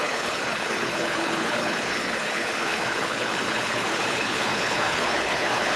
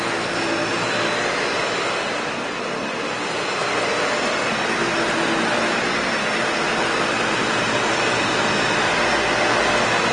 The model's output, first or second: first